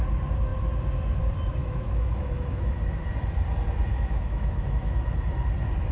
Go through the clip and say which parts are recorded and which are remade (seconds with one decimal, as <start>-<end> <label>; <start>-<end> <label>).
0.0-1.6 recorded; 1.6-2.8 remade; 2.8-3.9 recorded; 3.9-5.1 remade; 5.1-5.9 recorded